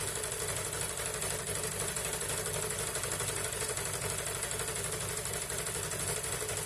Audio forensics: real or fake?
real